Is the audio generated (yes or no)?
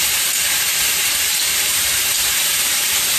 yes